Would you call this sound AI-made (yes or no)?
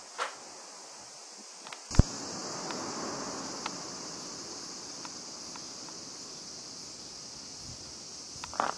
no